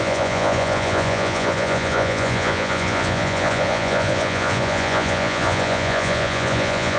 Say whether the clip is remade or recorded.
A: remade